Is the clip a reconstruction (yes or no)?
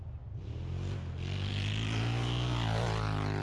no